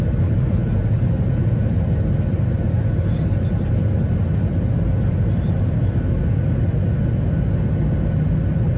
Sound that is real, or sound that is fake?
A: real